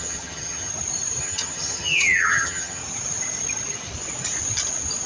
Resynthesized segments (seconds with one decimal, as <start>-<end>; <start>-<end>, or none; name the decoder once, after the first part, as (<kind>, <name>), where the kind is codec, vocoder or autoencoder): 0.0-0.7 (vocoder, HiFi-GAN); 1.2-2.8